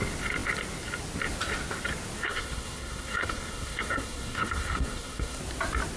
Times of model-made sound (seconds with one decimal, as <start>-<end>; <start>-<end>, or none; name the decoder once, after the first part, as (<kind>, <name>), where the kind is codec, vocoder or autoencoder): 2.2-5.4 (codec, SNAC)